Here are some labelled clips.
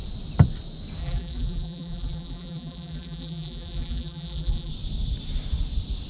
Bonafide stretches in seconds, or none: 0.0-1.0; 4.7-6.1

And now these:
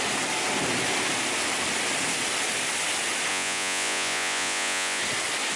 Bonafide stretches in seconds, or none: 0.0-3.3; 5.0-5.6